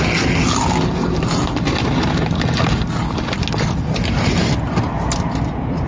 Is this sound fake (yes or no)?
no